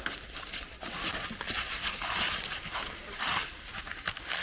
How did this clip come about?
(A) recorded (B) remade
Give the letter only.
A